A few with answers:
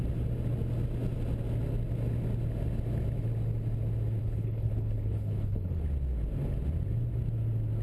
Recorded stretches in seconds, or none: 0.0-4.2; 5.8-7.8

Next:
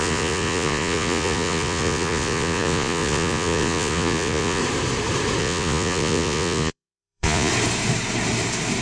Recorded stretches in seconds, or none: 4.6-5.4; 7.5-8.8

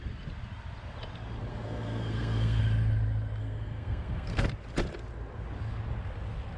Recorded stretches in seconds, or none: 0.0-1.5; 2.6-3.4; 4.5-6.6